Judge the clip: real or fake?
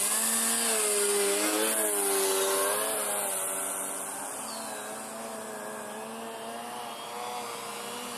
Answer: real